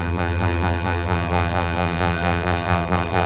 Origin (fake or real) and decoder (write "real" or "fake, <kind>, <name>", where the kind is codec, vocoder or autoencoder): fake, vocoder, BigVGAN v2